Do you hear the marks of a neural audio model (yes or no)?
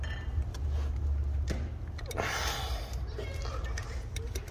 no